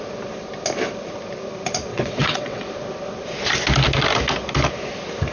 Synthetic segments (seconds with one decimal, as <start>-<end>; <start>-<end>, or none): 1.9-2.7